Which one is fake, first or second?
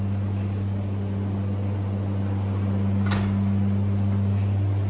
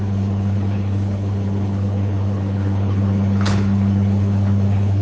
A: second